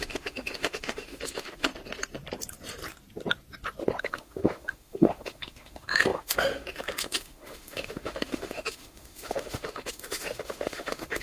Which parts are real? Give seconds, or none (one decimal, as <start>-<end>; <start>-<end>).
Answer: 1.7-4.0